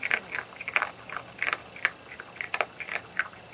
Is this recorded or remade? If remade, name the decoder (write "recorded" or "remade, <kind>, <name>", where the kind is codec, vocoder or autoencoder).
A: recorded